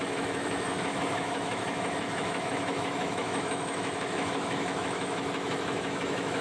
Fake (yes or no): yes